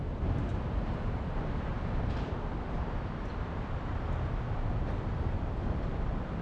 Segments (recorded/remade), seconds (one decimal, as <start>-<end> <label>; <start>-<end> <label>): 0.0-6.4 recorded

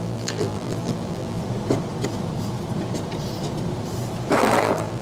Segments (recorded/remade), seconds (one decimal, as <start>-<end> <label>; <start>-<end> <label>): 0.0-1.4 remade; 1.4-4.4 recorded; 4.4-5.0 remade

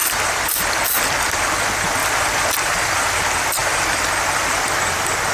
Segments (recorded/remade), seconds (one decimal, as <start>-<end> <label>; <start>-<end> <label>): 0.0-2.0 recorded; 2.0-3.2 remade; 3.2-5.3 recorded

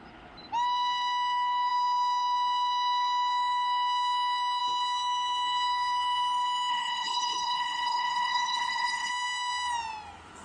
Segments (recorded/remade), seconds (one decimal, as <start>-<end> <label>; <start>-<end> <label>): 0.0-6.7 recorded; 6.7-9.1 remade; 9.1-10.4 recorded

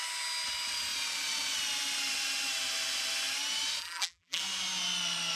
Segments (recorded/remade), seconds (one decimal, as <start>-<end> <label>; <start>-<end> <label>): 0.0-3.8 recorded; 3.8-4.4 remade; 4.4-5.4 recorded

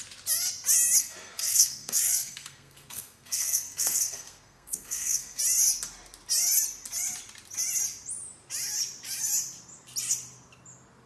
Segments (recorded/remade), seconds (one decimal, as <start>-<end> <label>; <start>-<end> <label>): 0.0-1.0 recorded; 1.0-5.4 remade; 5.4-11.1 recorded

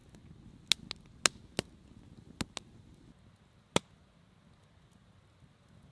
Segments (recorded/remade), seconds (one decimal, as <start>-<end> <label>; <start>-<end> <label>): 0.0-5.9 recorded